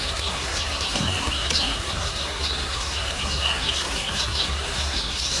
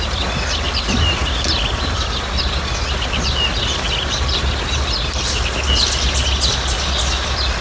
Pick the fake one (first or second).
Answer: first